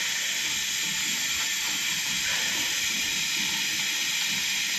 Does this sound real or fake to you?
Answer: real